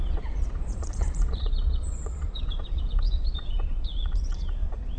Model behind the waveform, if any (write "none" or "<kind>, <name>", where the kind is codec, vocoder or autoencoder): vocoder, Vocos